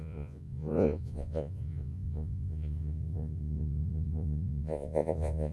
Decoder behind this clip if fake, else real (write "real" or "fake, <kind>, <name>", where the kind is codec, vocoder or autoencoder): fake, vocoder, Vocos